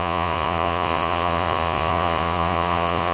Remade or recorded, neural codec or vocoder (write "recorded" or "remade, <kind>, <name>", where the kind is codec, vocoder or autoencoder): remade, vocoder, Vocos